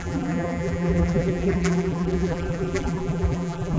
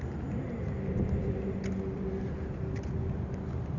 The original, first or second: second